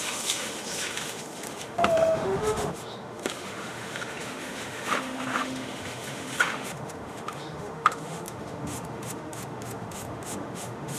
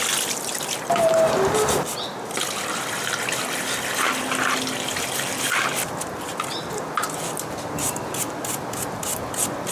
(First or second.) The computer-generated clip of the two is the first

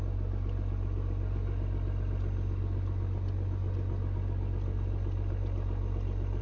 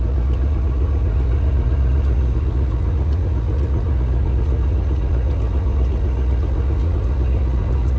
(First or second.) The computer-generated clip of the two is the second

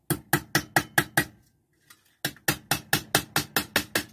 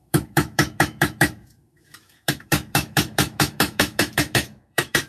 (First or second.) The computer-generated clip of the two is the second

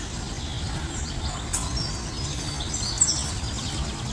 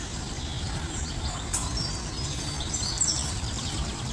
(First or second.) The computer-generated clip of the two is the second